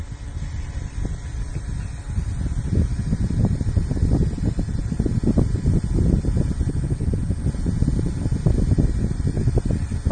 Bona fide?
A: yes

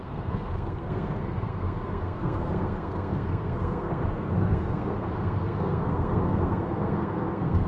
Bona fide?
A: no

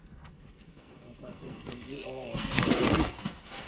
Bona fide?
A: no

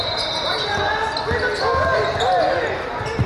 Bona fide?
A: yes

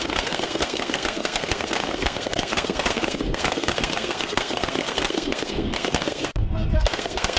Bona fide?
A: no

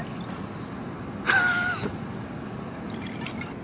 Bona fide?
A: yes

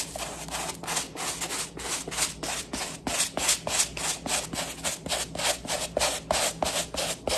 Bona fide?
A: yes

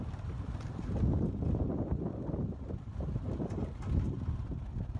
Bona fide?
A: yes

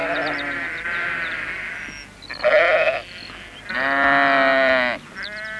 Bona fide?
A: yes